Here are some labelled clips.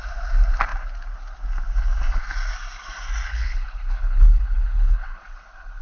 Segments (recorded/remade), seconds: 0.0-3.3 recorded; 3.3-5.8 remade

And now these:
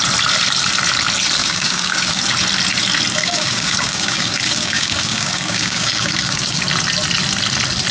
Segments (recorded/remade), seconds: 0.0-1.4 recorded; 1.4-2.2 remade; 2.2-3.2 recorded; 3.2-6.6 remade; 6.6-7.9 recorded

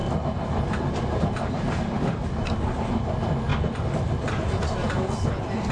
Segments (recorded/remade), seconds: 0.0-5.7 recorded

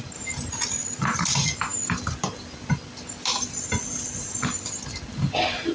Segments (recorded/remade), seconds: 0.0-5.7 recorded

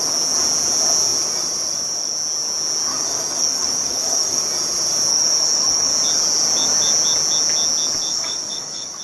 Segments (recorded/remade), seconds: 0.0-2.9 recorded; 2.9-4.4 remade; 4.4-5.1 recorded; 5.1-5.9 remade; 5.9-8.1 recorded; 8.1-9.0 remade

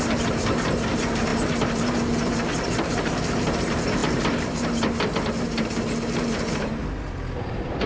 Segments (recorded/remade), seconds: 0.0-6.8 remade; 6.8-7.4 recorded; 7.4-7.9 remade